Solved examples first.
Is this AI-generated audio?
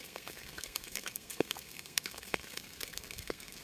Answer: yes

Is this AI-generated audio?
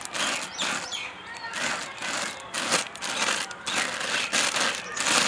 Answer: no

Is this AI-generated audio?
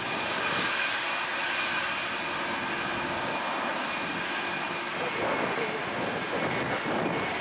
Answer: no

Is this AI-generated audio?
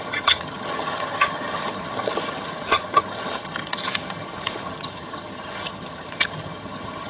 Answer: yes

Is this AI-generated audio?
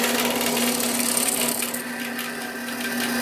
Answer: no